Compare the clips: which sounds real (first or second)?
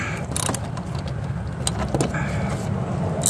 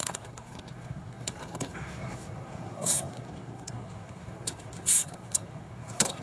first